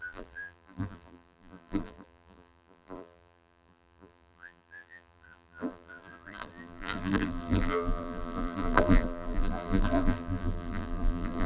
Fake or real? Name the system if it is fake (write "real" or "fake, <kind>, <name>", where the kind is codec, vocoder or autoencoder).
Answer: fake, vocoder, BigVGAN v2